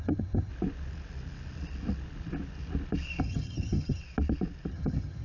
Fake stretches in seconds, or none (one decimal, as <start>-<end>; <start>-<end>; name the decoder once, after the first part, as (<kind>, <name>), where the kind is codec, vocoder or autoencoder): 0.0-0.5 (vocoder, HiFi-GAN); 3.2-4.0; 4.7-5.2